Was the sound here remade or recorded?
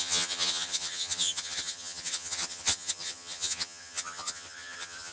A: remade